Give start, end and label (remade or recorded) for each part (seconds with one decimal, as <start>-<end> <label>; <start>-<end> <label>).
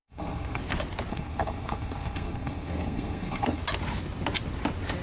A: 0.0-0.6 remade; 0.6-1.1 recorded; 1.1-3.6 remade; 3.6-5.0 recorded